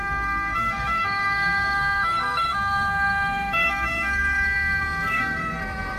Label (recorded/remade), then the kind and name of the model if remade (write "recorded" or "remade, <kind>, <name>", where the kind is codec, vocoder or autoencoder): remade, codec, SNAC